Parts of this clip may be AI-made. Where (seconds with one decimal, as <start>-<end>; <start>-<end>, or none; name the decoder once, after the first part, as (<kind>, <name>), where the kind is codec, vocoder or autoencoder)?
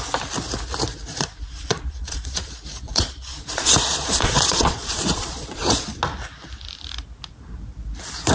0.9-5.9 (vocoder, Vocos)